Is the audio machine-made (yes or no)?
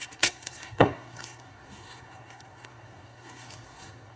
yes